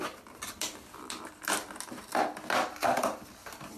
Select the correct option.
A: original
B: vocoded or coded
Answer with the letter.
A